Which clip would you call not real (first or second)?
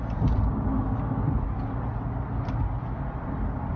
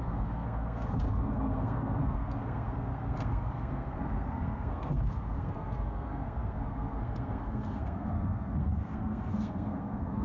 second